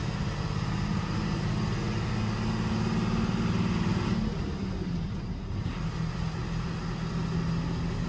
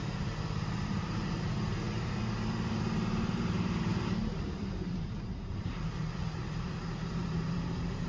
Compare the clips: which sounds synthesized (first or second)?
second